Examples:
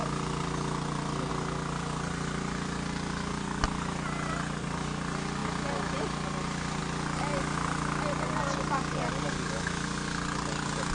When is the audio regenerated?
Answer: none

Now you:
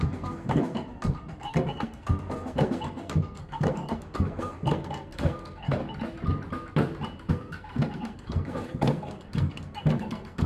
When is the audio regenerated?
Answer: 0.0-5.8 (codec, SNAC); 7.3-10.5

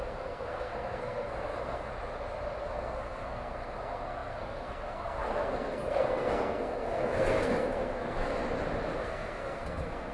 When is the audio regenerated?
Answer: 0.0-1.9 (codec, SNAC); 2.6-8.4; 9.0-10.1